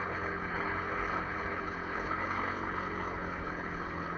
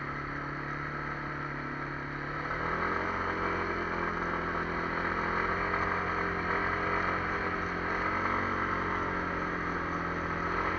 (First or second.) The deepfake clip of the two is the first